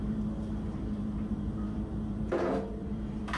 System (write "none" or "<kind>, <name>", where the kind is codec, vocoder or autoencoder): vocoder, BigVGAN v2